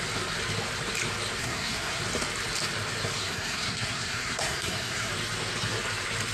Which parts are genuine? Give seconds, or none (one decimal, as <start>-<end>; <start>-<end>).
0.0-1.4; 2.0-3.2; 5.1-6.3

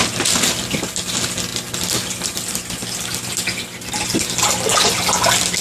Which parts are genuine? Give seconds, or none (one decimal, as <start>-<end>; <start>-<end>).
0.0-5.6

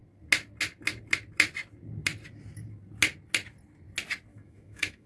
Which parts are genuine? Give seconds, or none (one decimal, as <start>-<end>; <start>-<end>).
0.0-4.3

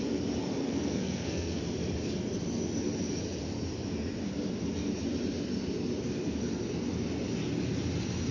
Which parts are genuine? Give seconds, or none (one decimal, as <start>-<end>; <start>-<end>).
0.0-0.6; 1.6-8.3